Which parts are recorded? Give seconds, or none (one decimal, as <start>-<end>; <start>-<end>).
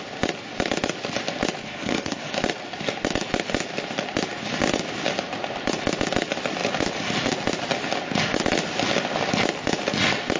0.0-1.6; 2.4-10.4